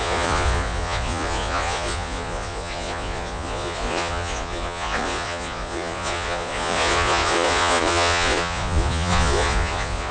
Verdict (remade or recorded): remade